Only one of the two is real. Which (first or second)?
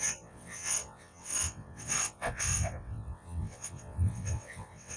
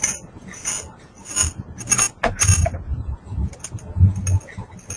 second